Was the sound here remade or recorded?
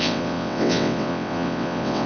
remade